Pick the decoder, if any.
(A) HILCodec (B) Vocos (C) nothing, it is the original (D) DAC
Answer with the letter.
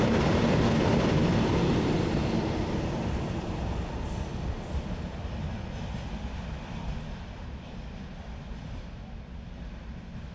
C